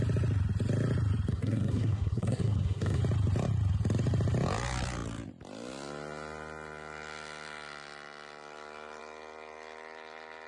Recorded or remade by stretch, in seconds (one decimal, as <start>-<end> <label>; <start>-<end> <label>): 0.0-1.3 recorded; 1.3-3.0 remade; 3.0-10.5 recorded